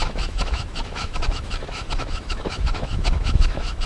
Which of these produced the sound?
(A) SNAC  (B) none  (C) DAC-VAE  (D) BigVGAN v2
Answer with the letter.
C